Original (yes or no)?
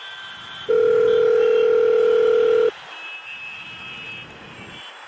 yes